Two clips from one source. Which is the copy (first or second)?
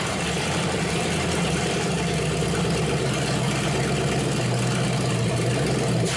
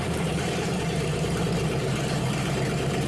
second